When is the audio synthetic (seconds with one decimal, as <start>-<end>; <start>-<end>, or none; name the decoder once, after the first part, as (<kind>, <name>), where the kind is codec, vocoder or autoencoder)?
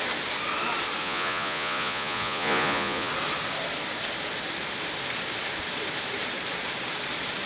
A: 1.0-3.1 (vocoder, Vocos)